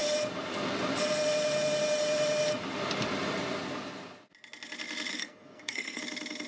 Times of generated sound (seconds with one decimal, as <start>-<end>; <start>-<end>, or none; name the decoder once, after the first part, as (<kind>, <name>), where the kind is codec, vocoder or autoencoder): 5.1-6.0 (codec, SNAC)